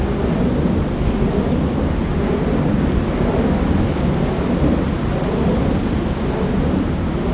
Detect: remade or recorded recorded